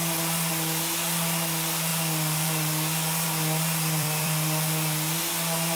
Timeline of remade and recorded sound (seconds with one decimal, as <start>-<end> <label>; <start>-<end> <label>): 0.0-0.5 remade; 0.5-1.9 recorded; 1.9-5.2 remade; 5.2-5.8 recorded